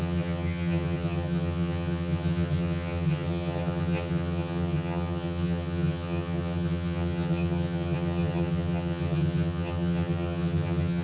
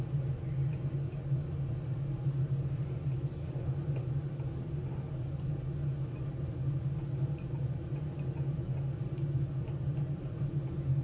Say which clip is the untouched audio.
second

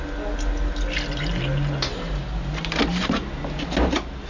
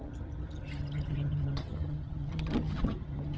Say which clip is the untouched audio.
first